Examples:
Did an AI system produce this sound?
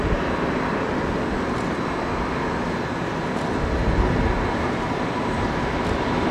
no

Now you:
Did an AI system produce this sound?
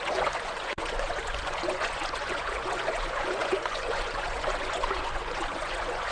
yes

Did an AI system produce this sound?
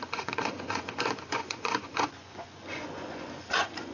yes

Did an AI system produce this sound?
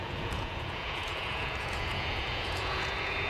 yes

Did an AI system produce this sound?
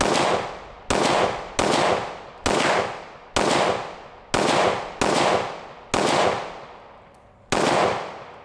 no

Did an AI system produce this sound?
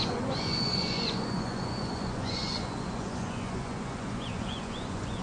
yes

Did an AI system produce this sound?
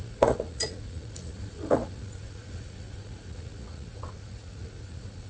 yes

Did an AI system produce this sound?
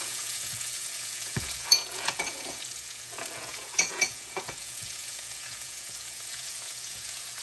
yes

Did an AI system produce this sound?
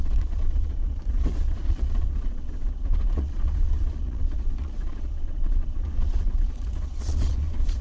yes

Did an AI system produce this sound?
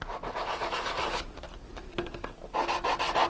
no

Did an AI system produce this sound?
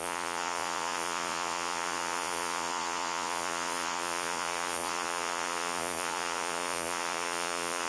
yes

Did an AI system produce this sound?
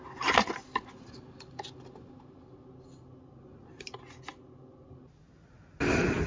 no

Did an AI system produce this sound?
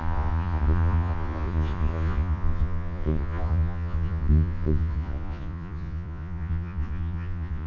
yes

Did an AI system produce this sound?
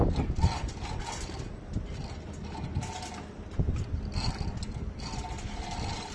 no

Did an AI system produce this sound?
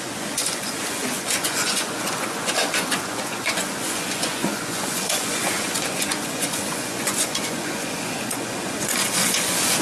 yes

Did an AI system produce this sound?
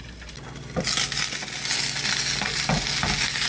no